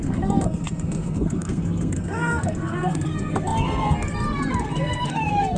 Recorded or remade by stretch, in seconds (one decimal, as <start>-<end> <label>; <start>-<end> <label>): 0.0-5.6 remade